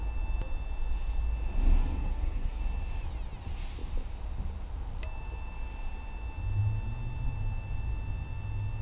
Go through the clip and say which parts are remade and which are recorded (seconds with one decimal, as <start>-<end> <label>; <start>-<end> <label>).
0.0-1.8 recorded; 1.8-2.6 remade; 2.6-8.8 recorded